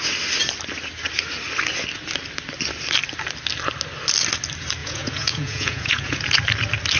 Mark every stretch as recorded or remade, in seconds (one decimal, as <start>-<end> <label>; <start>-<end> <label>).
0.0-4.8 recorded; 4.8-6.2 remade; 6.2-7.0 recorded